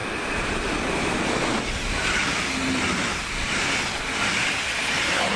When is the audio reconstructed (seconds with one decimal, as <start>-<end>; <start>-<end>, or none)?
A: none